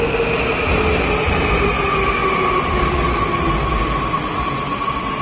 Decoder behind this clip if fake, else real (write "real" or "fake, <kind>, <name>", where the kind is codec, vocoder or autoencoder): real